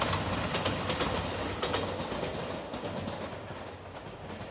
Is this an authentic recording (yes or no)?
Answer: yes